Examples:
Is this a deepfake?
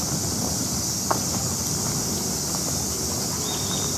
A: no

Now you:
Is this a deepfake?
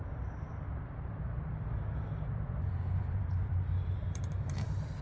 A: yes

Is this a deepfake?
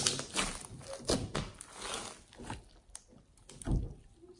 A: no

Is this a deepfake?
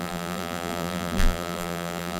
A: yes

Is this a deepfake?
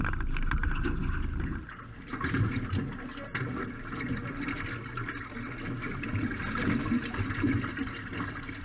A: no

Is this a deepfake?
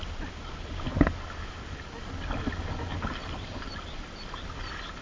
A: no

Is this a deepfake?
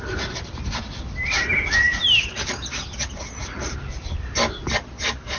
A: no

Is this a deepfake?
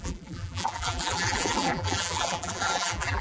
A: yes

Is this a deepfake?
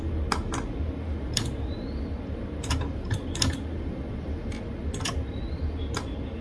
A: no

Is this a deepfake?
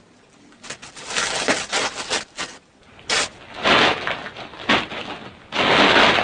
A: no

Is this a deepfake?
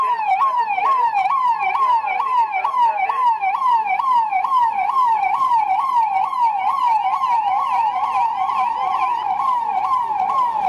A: yes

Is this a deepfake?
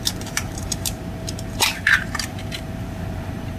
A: yes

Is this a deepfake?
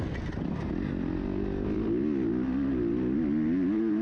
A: no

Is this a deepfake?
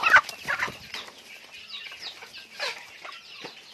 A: no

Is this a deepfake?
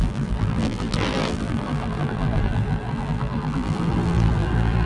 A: yes